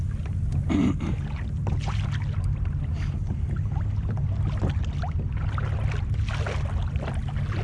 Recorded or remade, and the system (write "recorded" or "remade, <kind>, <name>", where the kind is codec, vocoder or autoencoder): recorded